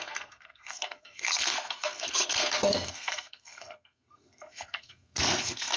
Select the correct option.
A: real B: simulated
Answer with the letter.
B